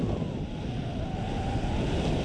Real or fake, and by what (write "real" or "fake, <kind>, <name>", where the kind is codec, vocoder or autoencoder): real